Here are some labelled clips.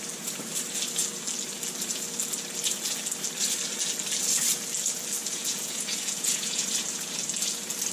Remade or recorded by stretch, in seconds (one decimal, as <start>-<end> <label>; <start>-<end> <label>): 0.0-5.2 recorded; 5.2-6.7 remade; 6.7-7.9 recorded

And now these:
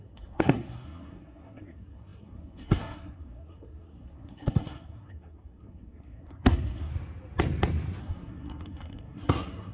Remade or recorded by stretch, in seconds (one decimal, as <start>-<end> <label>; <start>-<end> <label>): 0.0-6.9 remade; 6.9-8.0 recorded; 8.0-9.7 remade

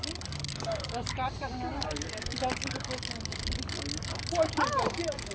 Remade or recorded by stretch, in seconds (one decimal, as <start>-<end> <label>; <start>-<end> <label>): 0.0-5.3 recorded

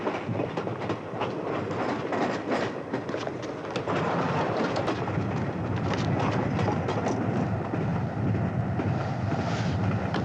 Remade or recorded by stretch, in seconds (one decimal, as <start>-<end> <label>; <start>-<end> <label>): 0.0-10.2 recorded